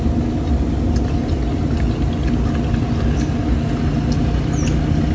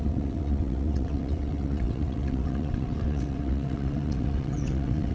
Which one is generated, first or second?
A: second